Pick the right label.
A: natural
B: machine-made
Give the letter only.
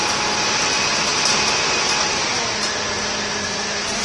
A